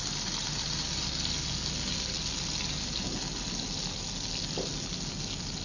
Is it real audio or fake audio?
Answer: real